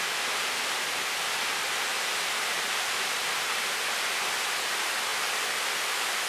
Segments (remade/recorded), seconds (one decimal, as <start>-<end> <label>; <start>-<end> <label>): 0.0-6.3 recorded